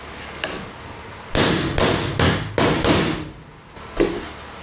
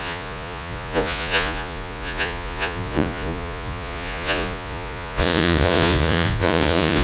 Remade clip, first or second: second